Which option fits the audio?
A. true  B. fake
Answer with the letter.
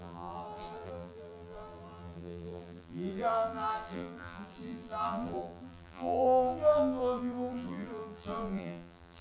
B